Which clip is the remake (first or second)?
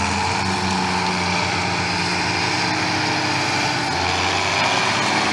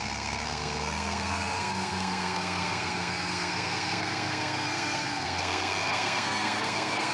second